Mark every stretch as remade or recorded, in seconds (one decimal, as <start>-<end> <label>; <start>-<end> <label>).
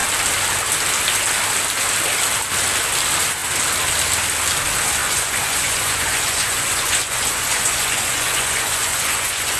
0.0-5.0 recorded; 5.0-9.6 remade